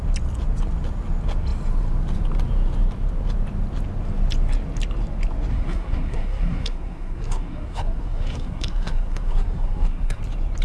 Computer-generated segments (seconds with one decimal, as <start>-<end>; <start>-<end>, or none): 5.5-10.2